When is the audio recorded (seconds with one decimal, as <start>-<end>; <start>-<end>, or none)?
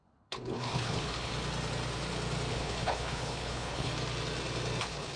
1.3-2.5; 3.9-4.8